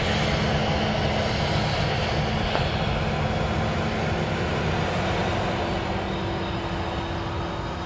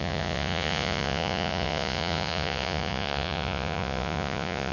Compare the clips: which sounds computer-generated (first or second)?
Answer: second